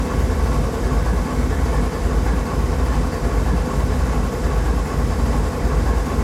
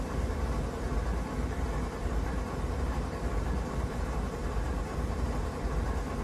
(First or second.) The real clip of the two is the first